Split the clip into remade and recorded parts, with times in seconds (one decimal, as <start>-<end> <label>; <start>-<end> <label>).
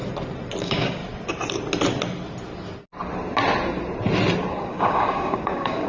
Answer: 0.0-0.6 recorded; 0.6-1.0 remade; 1.0-4.5 recorded; 4.5-5.9 remade